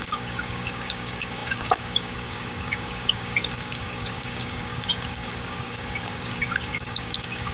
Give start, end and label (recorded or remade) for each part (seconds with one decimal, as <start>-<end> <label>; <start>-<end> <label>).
0.0-7.5 remade